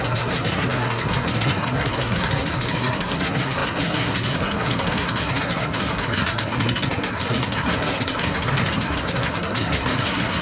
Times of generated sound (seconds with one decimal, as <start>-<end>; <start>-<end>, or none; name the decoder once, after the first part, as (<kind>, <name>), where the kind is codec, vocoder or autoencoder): 0.0-10.4 (codec, SNAC)